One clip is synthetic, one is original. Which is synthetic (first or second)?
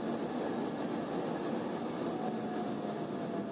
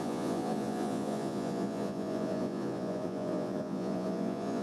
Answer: second